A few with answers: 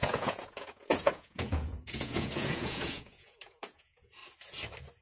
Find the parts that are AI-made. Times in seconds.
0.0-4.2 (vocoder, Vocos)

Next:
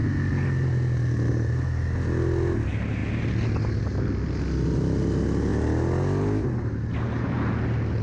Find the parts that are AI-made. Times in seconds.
none